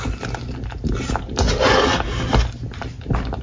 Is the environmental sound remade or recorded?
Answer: recorded